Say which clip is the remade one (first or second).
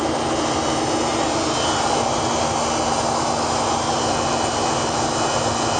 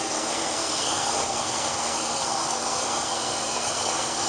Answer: second